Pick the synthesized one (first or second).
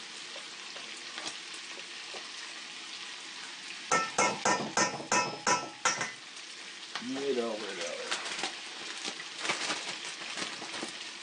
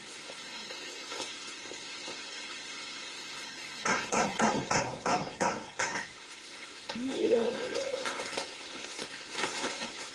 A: second